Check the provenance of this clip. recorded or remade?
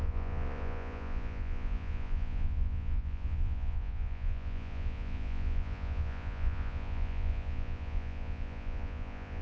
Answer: remade